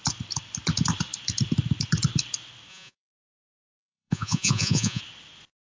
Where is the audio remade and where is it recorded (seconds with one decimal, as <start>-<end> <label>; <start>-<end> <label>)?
0.0-2.7 recorded; 2.7-5.0 remade; 5.0-5.6 recorded